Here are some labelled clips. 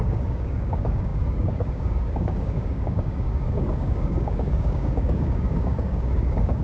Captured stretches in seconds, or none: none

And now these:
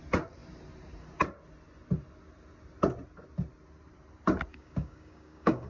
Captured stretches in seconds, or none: 0.0-4.5

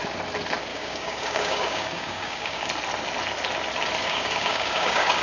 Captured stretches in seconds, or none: 0.0-0.7; 2.7-4.0

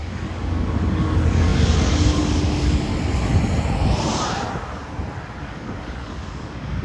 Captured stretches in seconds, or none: 2.9-5.4

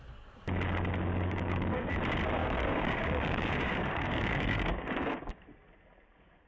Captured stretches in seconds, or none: 0.0-1.1; 1.9-2.4; 5.4-6.5